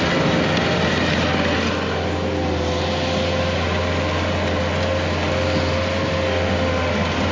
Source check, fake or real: real